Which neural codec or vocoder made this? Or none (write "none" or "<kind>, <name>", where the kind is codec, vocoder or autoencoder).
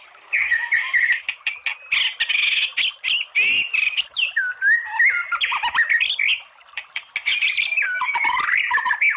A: none